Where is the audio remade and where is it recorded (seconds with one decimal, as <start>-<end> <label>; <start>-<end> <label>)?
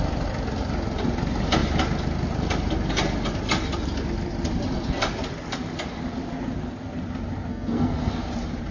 0.0-7.5 recorded; 7.5-8.1 remade; 8.1-8.7 recorded